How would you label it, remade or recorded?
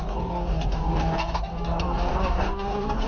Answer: remade